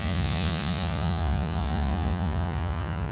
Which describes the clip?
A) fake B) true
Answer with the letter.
A